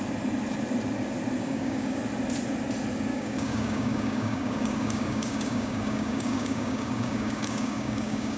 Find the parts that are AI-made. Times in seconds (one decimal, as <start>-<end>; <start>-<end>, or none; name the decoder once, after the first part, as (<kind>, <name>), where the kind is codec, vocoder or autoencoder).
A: 1.4-2.0 (codec, DAC); 3.1-8.4